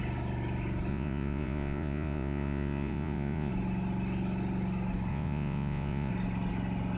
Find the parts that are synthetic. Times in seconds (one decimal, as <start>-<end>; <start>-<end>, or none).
0.9-3.5; 5.1-6.1